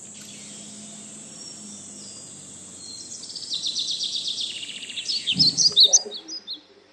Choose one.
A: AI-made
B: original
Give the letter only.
B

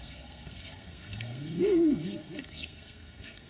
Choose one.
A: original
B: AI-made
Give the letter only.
B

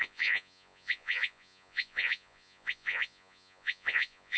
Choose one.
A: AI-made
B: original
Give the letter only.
A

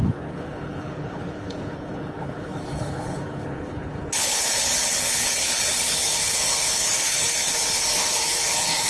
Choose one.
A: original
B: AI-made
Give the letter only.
B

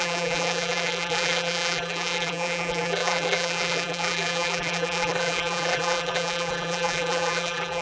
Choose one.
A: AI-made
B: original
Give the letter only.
A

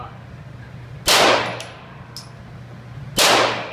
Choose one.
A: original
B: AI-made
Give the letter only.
A